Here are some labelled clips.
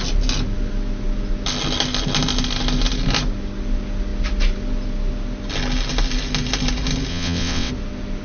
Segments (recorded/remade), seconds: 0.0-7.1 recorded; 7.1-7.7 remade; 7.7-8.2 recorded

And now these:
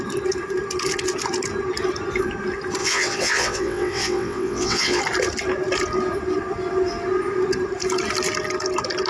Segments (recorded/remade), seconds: 0.0-2.8 recorded; 2.8-5.0 remade; 5.0-9.1 recorded

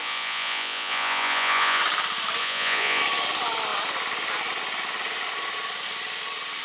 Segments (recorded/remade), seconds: 0.0-1.8 remade; 1.8-2.4 recorded; 2.4-3.0 remade; 3.0-6.6 recorded